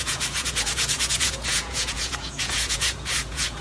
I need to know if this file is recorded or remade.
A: remade